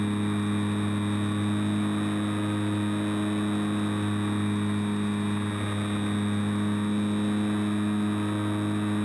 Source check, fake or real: real